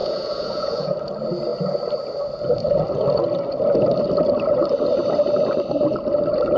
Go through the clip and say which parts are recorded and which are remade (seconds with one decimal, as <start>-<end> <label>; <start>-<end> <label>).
0.0-1.1 remade; 1.1-6.6 recorded